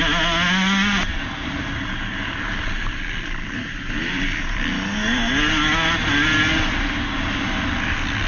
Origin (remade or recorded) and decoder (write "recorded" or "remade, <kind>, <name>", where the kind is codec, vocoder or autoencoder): recorded